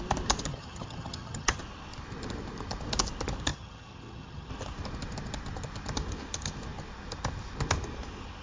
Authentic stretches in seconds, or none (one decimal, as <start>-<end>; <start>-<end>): 0.0-0.5; 1.6-3.5; 4.5-8.4